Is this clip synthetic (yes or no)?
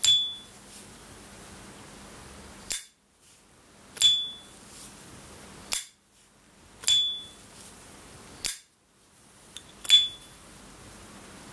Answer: no